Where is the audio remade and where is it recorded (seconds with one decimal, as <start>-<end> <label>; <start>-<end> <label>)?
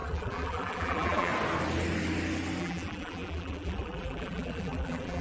0.0-1.3 remade; 1.3-2.6 recorded; 2.6-5.2 remade